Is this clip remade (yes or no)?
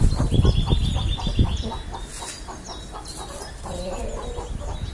no